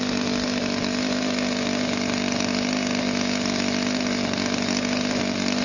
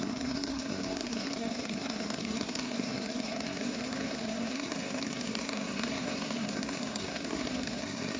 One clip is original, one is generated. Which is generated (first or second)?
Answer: second